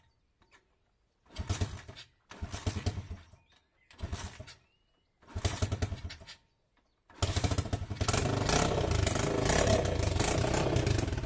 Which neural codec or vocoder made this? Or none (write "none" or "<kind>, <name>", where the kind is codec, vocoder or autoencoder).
none